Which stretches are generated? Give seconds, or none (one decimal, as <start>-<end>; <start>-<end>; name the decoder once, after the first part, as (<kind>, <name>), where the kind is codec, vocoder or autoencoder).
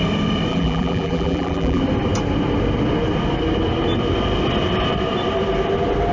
0.5-1.8 (vocoder, BigVGAN v2)